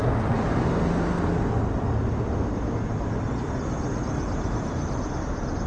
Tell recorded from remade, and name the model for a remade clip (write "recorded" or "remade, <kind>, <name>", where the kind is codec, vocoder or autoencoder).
recorded